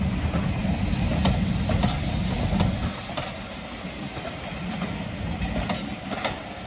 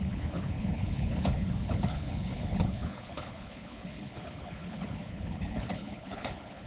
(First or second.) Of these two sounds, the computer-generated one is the second